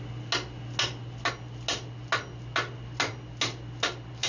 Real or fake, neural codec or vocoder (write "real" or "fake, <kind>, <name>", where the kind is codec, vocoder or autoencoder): real